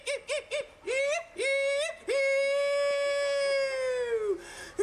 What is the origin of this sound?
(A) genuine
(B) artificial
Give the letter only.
A